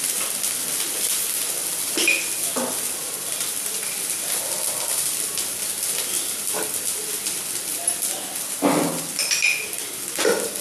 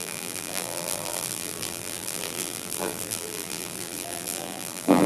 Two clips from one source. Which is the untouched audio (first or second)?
first